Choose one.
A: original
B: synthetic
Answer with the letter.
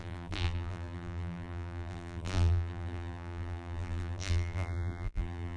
B